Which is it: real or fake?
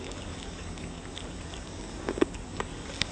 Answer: fake